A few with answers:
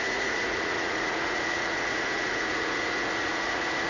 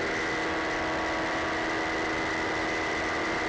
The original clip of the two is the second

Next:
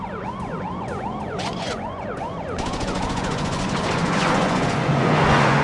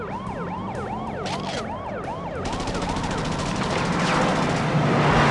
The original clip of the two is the second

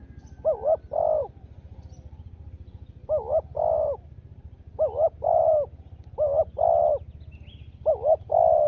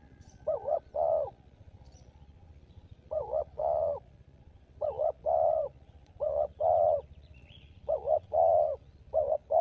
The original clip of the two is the first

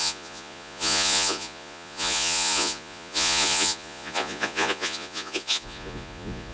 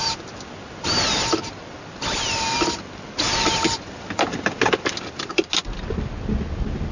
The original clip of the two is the second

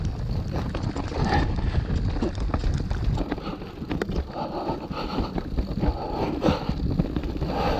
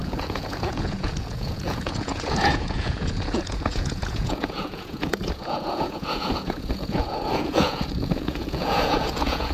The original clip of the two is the first